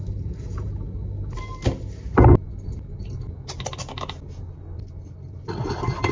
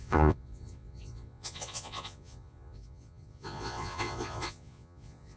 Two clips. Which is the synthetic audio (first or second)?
second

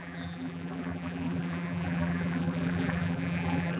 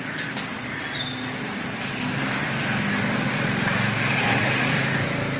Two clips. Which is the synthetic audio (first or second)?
first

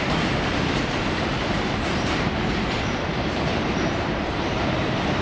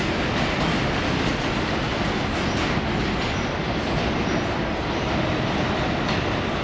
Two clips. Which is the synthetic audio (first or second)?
first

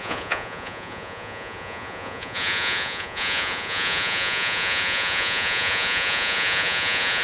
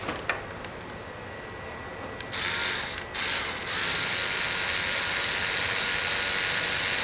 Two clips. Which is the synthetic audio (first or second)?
first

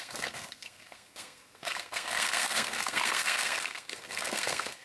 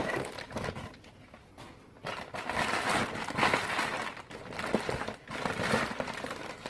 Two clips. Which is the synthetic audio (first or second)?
first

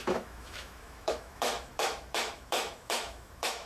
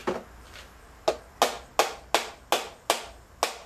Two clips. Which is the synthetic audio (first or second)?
first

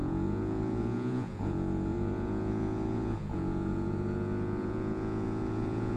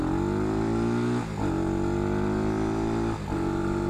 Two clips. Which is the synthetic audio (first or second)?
first